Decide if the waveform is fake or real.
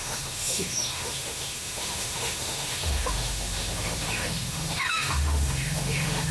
fake